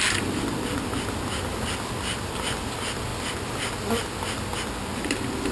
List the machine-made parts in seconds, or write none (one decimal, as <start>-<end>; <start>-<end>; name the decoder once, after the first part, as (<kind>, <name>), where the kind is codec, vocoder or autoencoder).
none